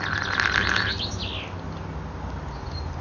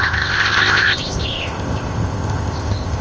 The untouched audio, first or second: first